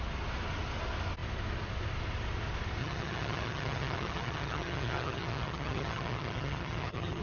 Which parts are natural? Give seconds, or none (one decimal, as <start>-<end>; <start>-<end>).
0.0-2.8